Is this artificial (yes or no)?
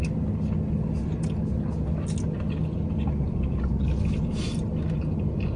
no